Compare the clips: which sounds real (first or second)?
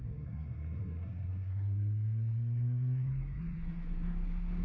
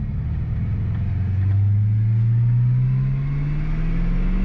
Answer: second